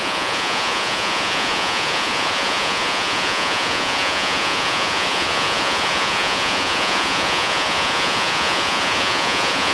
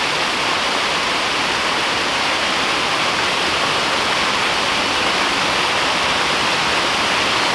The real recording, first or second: second